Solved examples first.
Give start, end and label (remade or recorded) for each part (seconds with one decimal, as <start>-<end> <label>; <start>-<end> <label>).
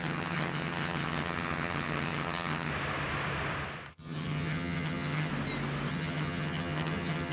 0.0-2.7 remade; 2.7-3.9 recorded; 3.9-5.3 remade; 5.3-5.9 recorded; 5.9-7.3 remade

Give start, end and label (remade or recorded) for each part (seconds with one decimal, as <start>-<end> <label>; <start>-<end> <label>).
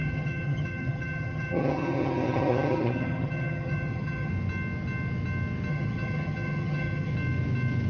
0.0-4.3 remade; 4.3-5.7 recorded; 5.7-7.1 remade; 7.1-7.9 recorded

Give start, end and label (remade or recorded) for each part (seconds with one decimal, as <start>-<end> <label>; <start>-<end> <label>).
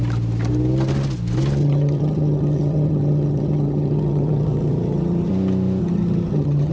0.0-1.6 recorded; 1.6-5.3 remade; 5.3-5.8 recorded; 5.8-6.7 remade